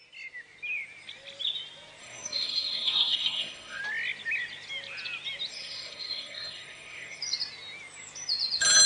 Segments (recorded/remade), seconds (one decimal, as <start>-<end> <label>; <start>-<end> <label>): 0.0-2.0 recorded; 2.0-3.8 remade; 3.8-5.5 recorded; 5.5-7.2 remade; 7.2-8.9 recorded